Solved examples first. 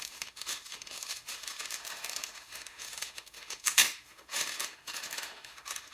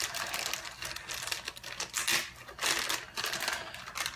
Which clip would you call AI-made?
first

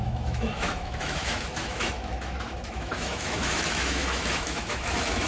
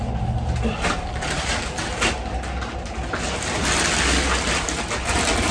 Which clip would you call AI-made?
first